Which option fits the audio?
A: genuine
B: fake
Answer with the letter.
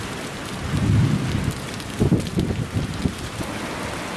A